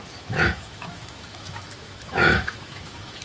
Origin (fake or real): fake